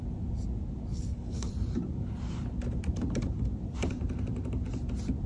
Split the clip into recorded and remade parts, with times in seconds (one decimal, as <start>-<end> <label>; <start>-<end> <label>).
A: 0.0-0.9 recorded; 0.9-1.5 remade; 1.5-5.3 recorded